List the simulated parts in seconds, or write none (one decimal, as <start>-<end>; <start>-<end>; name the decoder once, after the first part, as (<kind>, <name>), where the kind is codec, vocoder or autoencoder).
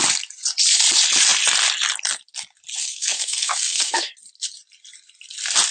2.8-4.1 (codec, SNAC)